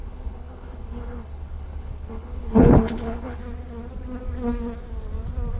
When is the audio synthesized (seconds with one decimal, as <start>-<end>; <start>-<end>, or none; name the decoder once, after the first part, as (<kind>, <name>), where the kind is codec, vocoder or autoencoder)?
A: 0.0-3.4 (codec, HILCodec)